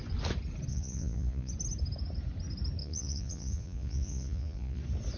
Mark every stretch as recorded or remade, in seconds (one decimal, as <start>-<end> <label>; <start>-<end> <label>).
0.0-0.7 recorded; 0.7-1.5 remade; 1.5-2.8 recorded; 2.8-4.8 remade; 4.8-5.2 recorded